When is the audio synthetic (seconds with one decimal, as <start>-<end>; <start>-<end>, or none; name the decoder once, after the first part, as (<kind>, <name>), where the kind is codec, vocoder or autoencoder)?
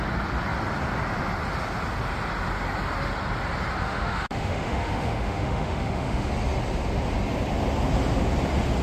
3.8-6.3 (autoencoder, DAC-VAE)